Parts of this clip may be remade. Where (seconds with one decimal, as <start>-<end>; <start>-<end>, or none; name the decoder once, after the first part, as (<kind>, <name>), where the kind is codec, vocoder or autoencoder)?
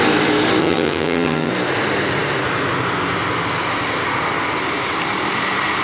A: 0.6-1.5 (vocoder, HiFi-GAN)